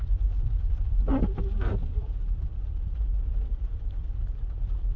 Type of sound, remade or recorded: remade